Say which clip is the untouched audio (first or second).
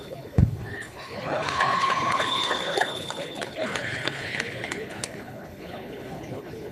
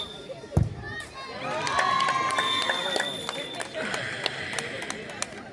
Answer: second